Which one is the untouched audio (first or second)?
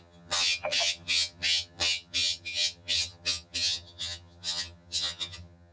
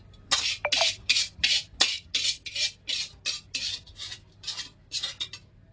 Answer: second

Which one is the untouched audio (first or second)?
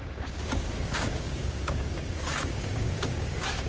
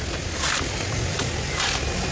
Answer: second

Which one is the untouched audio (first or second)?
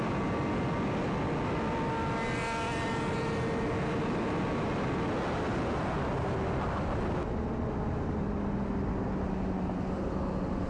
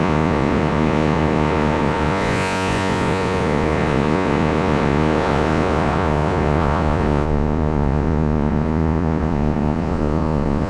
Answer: first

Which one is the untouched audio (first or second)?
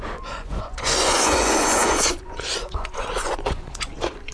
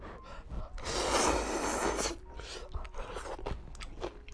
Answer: second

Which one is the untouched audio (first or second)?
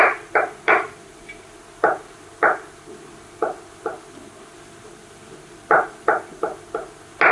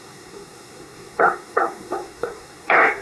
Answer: first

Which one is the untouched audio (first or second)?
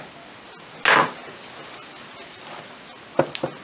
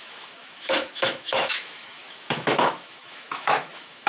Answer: first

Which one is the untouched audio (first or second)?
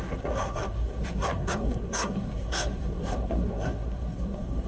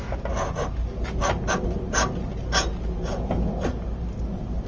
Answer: second